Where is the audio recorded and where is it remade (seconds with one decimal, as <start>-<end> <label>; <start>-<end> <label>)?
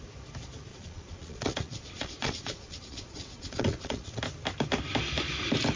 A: 0.0-0.7 recorded; 0.7-4.2 remade; 4.2-5.8 recorded